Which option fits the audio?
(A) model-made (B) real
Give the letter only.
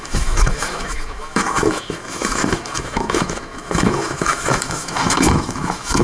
A